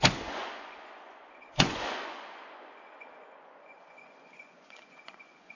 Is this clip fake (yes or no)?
yes